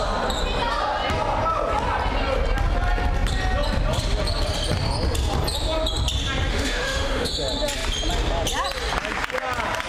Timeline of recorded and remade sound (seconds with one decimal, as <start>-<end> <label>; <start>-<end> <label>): 0.0-6.5 recorded; 6.5-7.3 remade; 7.3-9.9 recorded